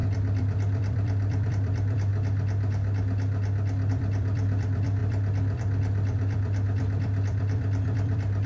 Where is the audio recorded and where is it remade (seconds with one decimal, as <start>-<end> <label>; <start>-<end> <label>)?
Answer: 0.0-2.1 remade; 2.1-3.9 recorded; 3.9-8.5 remade